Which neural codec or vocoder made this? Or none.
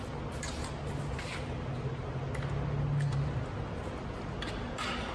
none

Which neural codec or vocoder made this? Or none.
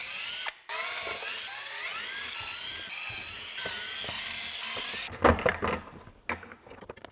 none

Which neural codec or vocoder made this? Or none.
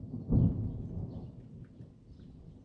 none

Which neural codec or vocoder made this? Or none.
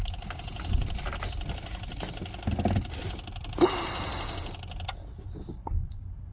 none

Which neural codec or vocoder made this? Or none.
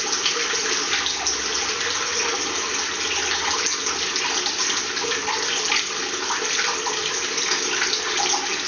none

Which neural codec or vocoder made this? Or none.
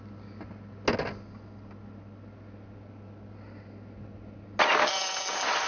none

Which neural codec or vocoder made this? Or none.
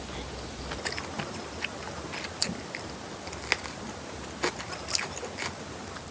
none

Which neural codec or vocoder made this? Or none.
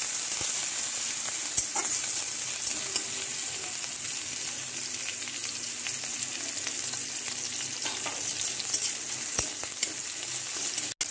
none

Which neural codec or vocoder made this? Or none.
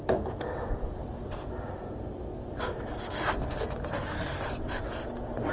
none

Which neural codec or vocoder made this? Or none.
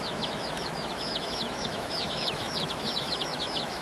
autoencoder, DAC-VAE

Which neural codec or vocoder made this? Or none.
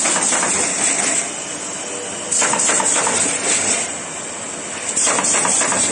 none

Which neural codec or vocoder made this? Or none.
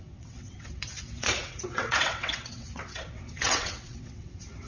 vocoder, WaveNeXt